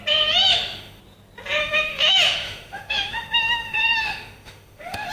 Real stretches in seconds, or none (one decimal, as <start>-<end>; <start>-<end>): 0.0-0.5; 1.0-1.6